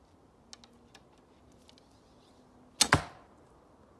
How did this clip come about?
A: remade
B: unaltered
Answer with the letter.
B